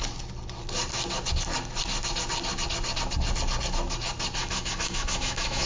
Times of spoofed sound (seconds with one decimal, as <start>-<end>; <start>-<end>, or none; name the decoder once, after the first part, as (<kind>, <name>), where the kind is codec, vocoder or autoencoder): 4.4-5.7 (autoencoder, DAC-VAE)